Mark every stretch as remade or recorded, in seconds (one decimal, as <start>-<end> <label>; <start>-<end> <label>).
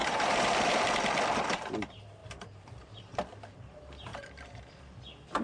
0.0-0.8 remade; 0.8-2.2 recorded; 2.2-3.0 remade; 3.0-4.1 recorded; 4.1-4.8 remade; 4.8-5.4 recorded